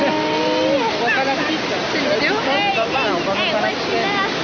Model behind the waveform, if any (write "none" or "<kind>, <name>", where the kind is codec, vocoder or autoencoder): none